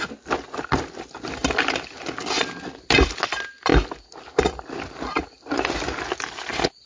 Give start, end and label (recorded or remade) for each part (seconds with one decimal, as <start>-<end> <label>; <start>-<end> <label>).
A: 0.0-6.9 recorded